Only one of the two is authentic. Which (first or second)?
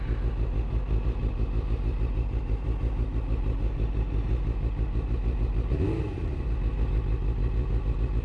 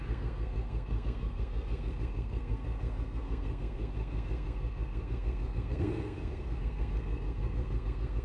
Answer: first